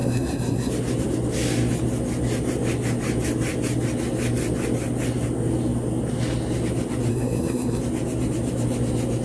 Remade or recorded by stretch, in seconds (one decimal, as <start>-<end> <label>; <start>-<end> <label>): 0.0-0.7 remade; 0.7-7.1 recorded; 7.1-7.8 remade; 7.8-9.2 recorded